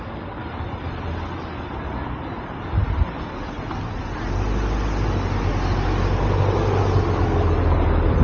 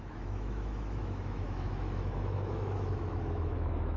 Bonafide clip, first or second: first